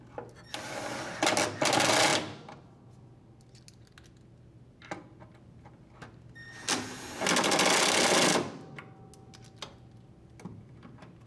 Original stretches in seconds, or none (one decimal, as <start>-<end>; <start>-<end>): 0.0-11.3